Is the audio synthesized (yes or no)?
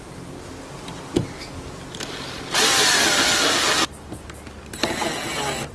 no